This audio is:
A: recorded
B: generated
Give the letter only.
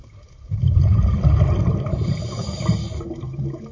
A